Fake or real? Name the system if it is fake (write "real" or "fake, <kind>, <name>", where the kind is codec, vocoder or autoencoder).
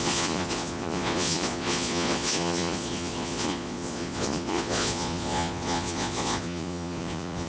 fake, vocoder, Vocos